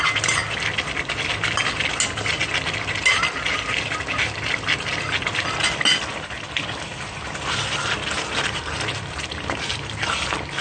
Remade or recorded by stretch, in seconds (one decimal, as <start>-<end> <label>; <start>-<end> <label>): 0.0-10.6 recorded